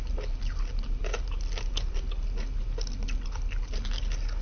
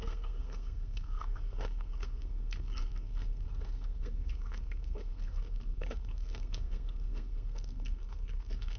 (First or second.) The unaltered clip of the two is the first